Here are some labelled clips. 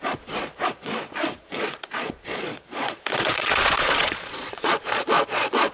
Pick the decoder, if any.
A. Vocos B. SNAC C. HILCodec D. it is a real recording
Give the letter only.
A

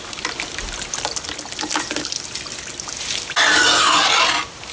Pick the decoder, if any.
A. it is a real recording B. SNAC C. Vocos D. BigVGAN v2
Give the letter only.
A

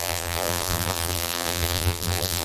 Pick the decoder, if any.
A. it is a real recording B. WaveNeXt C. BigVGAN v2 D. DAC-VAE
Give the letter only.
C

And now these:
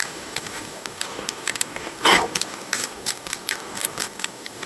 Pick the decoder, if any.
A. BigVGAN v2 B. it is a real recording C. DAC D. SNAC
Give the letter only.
C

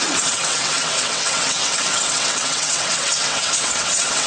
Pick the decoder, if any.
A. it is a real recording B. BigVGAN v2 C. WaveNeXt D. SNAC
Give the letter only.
C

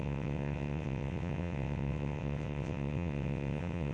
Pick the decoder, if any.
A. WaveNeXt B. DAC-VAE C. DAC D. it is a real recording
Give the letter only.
A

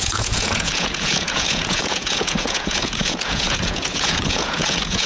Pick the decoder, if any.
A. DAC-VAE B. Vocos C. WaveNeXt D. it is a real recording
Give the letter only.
B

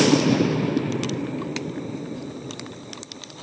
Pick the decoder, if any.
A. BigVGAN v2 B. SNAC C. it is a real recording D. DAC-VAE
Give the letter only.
C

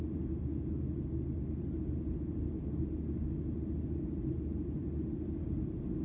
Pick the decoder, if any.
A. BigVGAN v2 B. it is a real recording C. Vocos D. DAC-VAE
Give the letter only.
B